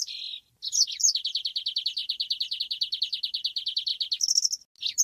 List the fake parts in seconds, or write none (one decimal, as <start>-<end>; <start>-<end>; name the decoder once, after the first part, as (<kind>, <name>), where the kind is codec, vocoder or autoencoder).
none